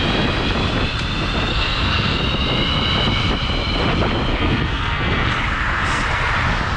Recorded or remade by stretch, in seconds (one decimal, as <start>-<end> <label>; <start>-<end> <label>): 0.0-1.5 recorded; 1.5-2.2 remade; 2.2-4.3 recorded; 4.3-6.3 remade; 6.3-6.8 recorded